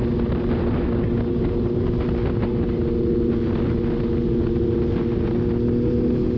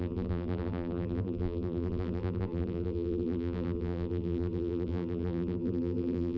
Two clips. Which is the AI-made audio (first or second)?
second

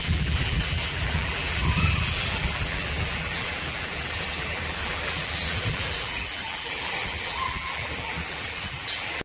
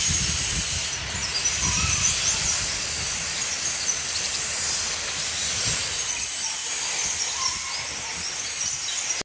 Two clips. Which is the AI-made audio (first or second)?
first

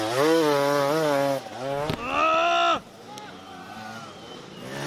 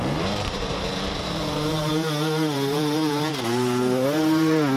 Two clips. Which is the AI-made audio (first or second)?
second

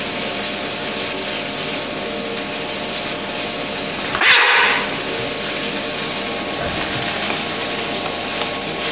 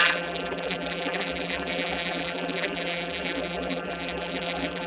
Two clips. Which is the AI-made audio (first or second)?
second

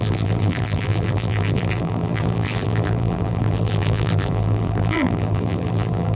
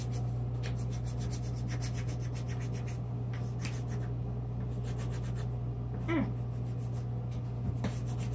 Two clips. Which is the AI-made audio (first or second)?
first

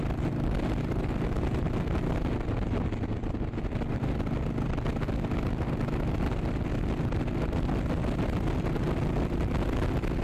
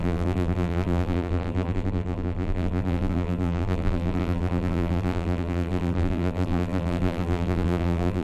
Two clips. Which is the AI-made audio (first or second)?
second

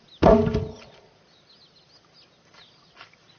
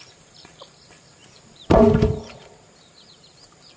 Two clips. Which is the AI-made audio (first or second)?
second